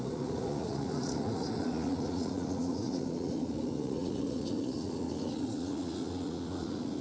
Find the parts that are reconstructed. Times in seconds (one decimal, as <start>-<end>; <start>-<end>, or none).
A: 0.0-7.0